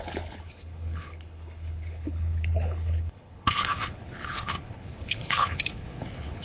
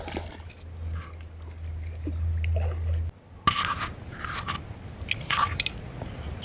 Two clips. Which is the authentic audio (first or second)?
second